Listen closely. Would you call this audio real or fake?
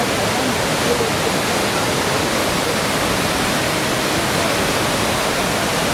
real